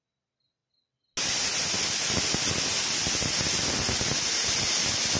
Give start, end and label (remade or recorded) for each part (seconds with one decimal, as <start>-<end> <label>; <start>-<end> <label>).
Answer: 0.0-5.2 recorded